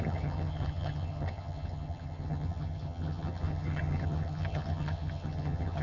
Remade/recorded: remade